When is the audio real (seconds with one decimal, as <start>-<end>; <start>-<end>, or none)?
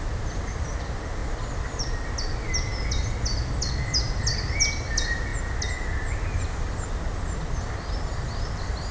0.0-8.9